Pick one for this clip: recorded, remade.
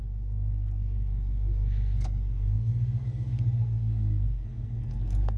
remade